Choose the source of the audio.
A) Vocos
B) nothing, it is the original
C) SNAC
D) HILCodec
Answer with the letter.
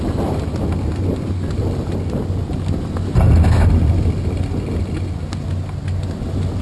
B